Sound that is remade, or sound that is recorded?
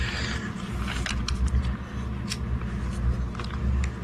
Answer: recorded